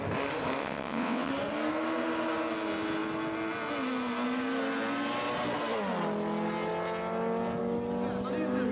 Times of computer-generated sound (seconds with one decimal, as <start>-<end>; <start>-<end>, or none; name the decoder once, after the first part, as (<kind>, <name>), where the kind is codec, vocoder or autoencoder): 0.6-1.3 (vocoder, WaveNeXt)